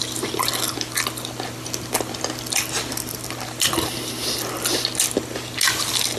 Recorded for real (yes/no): yes